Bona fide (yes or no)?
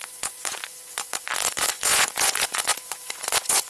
no